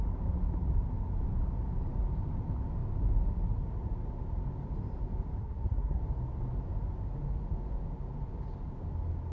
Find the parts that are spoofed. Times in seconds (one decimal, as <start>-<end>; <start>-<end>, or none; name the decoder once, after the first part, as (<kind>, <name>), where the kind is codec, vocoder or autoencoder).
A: 5.4-6.0 (codec, SNAC)